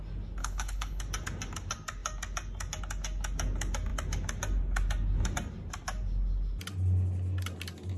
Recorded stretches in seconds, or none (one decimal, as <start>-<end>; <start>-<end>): 0.0-0.4; 1.0-8.0